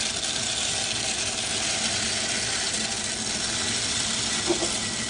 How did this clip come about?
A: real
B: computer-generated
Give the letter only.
A